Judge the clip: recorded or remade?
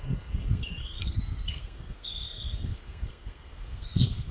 remade